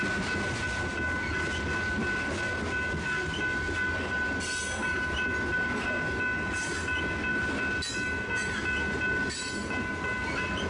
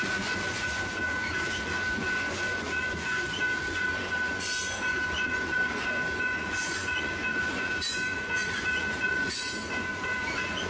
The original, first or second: first